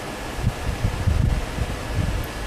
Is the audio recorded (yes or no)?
yes